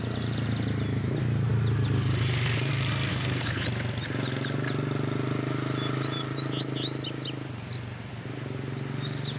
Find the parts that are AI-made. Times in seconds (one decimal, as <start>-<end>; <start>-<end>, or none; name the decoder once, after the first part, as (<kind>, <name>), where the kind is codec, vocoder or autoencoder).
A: 3.1-3.6 (codec, SNAC)

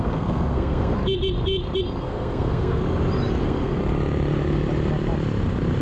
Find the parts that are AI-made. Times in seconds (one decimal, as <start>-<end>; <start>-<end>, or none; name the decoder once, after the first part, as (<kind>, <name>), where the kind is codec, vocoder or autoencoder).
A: 0.0-1.0 (codec, SNAC); 2.0-2.8; 3.4-3.8

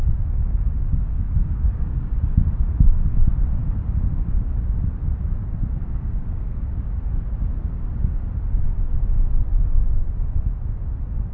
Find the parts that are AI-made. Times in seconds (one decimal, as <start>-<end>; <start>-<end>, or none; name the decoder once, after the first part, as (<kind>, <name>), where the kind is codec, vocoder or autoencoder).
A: 1.1-2.1 (codec, SNAC); 5.8-6.7

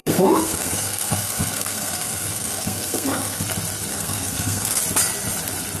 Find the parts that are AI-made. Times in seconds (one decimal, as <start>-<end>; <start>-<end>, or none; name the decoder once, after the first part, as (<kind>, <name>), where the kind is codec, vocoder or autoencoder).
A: 0.0-3.4 (codec, SNAC); 3.9-4.8